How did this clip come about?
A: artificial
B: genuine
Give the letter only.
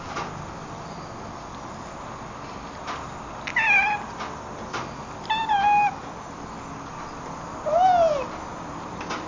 B